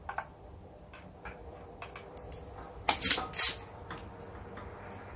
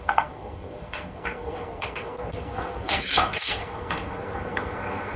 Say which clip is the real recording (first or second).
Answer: first